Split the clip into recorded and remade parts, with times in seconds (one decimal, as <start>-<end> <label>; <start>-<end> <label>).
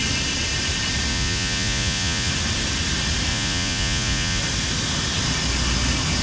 0.0-1.1 recorded; 1.1-2.3 remade; 2.3-3.3 recorded; 3.3-4.4 remade; 4.4-6.2 recorded